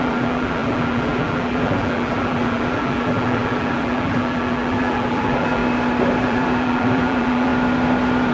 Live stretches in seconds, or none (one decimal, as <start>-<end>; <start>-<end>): 5.6-6.2; 7.5-8.3